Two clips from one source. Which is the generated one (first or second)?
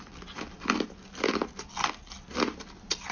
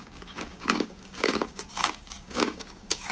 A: second